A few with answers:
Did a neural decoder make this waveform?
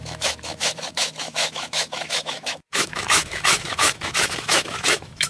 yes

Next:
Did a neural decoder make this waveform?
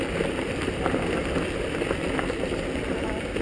no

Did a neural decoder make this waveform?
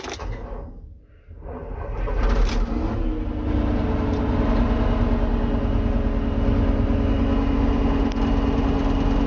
no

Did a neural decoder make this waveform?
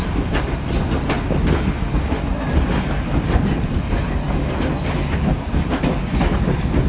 no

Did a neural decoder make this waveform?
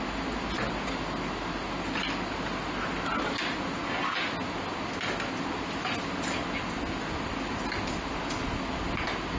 no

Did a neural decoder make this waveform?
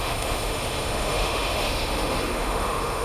yes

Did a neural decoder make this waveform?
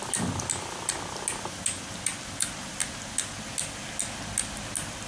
no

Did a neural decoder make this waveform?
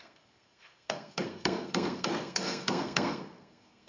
yes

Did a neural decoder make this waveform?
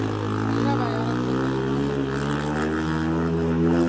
no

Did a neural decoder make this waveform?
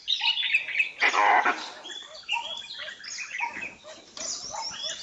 no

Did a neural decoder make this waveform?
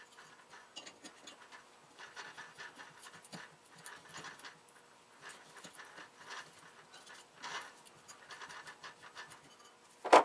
no